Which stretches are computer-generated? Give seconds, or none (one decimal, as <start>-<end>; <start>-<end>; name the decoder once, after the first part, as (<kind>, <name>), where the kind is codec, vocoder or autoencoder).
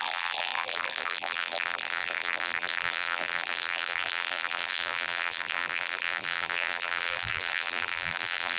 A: 0.0-8.6 (vocoder, BigVGAN v2)